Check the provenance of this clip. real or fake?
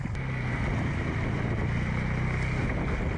real